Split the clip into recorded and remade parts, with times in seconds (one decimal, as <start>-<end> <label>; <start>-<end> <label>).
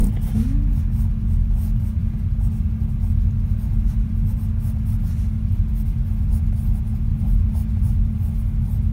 0.0-8.9 recorded